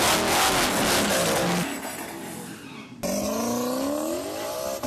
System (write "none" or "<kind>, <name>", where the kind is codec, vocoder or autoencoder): none